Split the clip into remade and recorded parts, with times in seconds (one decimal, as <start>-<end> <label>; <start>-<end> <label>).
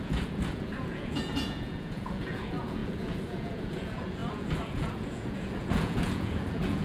0.0-6.8 remade